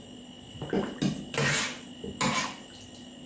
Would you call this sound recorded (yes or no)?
yes